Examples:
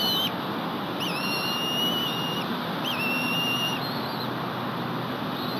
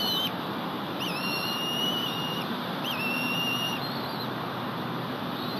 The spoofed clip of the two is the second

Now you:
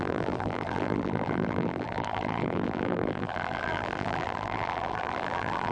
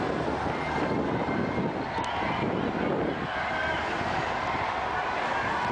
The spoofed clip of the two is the first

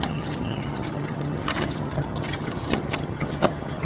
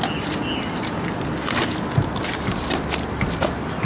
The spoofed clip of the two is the first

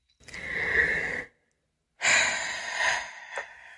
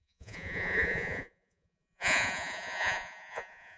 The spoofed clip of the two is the second